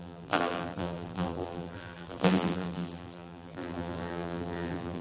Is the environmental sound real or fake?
fake